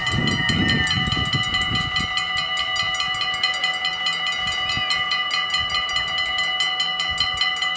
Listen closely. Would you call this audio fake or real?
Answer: real